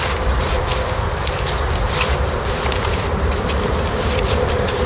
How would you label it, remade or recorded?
remade